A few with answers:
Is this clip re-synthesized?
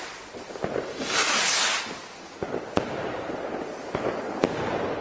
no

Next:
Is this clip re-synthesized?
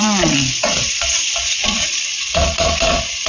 yes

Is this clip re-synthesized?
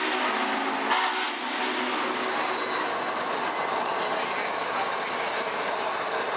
no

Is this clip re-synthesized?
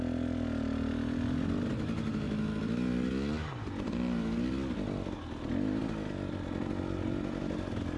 no